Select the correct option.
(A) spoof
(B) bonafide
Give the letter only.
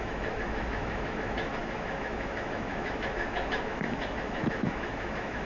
A